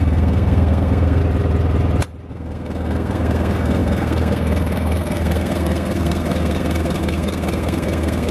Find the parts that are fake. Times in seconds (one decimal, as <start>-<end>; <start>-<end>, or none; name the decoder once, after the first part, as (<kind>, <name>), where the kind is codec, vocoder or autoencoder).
0.0-1.2 (codec, SNAC); 2.3-8.3